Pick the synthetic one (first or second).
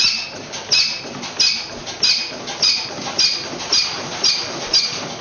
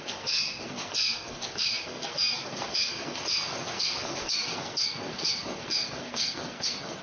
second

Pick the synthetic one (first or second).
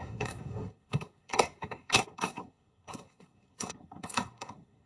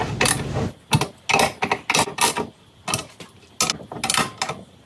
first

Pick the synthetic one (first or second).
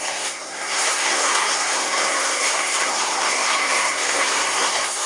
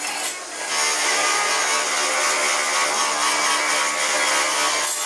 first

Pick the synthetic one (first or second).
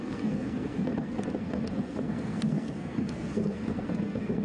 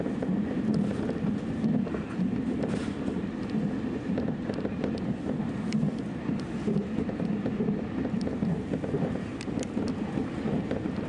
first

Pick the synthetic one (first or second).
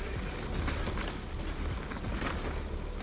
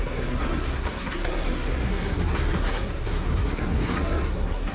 second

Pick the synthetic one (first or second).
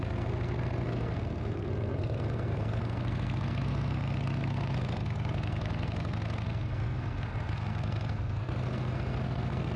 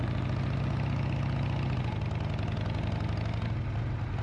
first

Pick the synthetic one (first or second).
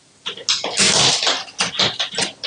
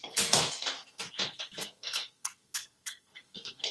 second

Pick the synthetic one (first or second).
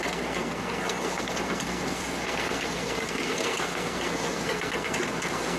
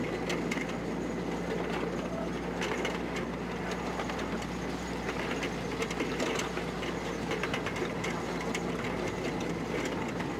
first